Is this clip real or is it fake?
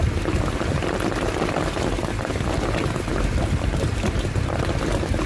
real